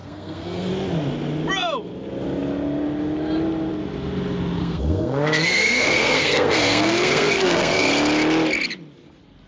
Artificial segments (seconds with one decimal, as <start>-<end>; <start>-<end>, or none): 0.0-0.7; 4.6-7.9